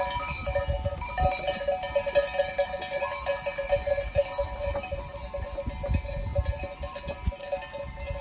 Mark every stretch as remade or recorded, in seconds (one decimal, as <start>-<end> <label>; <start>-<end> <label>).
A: 0.0-8.2 recorded